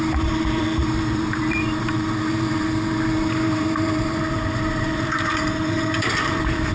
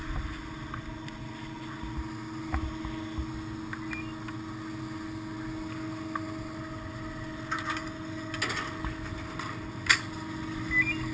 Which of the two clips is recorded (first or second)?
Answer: second